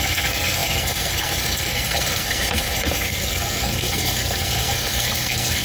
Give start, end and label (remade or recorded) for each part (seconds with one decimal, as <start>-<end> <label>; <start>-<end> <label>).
0.0-5.6 remade